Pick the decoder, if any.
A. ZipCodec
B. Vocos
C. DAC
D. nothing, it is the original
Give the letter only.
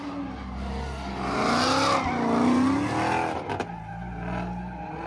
D